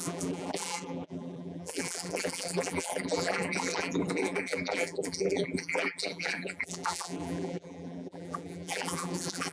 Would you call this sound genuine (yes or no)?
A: no